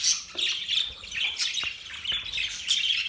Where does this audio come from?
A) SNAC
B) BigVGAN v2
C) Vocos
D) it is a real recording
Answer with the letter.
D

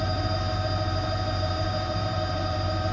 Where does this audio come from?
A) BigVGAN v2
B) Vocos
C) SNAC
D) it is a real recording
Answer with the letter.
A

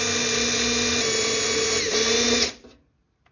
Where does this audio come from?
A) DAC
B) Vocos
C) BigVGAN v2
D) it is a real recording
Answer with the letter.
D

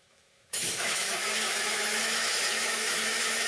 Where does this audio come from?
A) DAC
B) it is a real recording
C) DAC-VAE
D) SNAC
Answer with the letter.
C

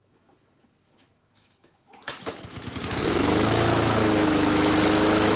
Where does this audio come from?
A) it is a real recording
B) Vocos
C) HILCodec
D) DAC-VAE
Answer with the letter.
D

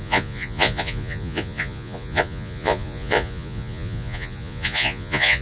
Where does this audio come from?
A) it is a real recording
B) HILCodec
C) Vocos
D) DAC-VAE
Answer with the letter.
C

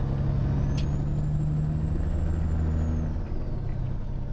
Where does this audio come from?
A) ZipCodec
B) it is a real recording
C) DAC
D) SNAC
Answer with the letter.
B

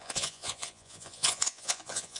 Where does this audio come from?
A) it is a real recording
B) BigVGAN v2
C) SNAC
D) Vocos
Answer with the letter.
D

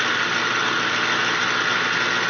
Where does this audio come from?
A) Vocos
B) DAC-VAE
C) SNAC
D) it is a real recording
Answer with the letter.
D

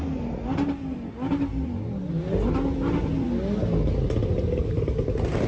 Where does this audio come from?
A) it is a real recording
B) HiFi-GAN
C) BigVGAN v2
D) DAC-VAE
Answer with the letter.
A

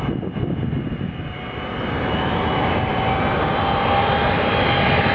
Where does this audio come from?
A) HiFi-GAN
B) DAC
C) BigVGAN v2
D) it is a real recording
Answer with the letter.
D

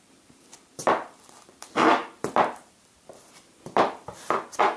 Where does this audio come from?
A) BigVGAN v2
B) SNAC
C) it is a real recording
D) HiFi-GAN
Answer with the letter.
A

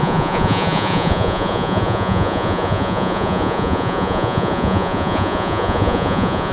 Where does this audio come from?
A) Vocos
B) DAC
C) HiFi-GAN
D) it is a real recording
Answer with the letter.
A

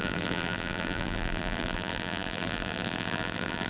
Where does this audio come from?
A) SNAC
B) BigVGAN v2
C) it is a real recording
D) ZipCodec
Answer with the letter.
B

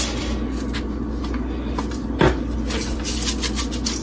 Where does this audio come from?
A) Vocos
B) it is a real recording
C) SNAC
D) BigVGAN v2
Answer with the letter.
B